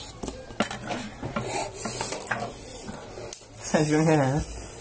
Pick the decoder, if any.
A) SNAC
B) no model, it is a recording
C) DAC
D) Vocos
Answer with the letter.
B